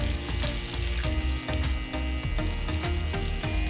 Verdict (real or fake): real